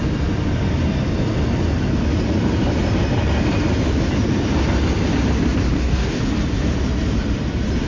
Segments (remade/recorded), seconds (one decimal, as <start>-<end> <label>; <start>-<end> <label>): 0.0-5.7 recorded; 5.7-6.2 remade; 6.2-7.9 recorded

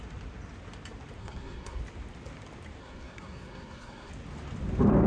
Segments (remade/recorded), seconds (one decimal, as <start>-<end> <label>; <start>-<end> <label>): 0.0-1.2 recorded; 1.2-1.8 remade; 1.8-2.8 recorded; 2.8-4.1 remade; 4.1-5.1 recorded

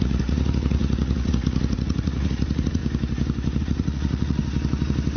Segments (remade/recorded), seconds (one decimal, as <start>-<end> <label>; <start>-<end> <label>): 0.0-2.8 remade; 2.8-3.6 recorded; 3.6-4.4 remade; 4.4-5.2 recorded

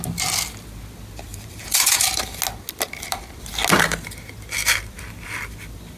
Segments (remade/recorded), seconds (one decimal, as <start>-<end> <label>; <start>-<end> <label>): 0.0-1.3 recorded; 1.3-2.4 remade; 2.4-6.0 recorded

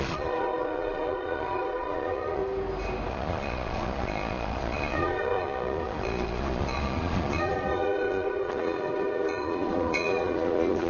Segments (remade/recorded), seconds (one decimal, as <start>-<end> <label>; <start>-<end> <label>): 0.0-2.4 remade; 2.4-3.1 recorded; 3.1-10.9 remade